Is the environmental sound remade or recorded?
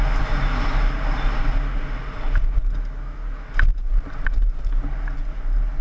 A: recorded